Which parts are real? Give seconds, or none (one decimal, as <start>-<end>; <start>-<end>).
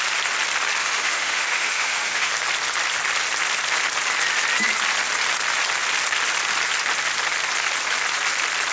0.0-0.8; 2.3-8.7